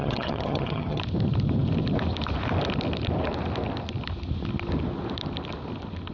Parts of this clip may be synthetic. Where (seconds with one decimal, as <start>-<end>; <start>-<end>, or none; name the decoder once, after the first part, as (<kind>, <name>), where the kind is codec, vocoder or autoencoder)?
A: 0.0-1.0 (vocoder, HiFi-GAN)